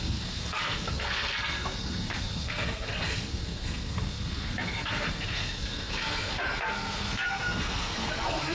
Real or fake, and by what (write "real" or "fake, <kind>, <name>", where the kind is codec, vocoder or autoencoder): fake, codec, SNAC